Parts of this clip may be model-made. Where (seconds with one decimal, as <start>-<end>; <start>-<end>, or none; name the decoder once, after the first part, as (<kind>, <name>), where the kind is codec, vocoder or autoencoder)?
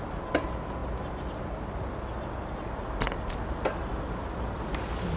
none